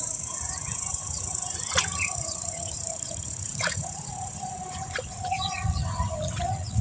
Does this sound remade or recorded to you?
remade